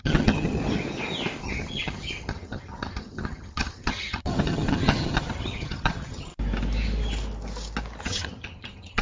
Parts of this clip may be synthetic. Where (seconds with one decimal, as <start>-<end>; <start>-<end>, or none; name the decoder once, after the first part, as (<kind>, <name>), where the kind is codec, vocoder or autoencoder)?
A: 0.0-0.6 (vocoder, HiFi-GAN); 1.4-6.3; 8.0-9.0